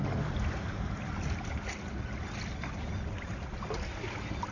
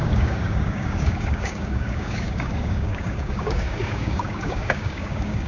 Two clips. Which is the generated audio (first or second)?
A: second